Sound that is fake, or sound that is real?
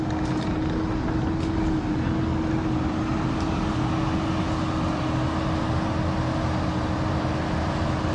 real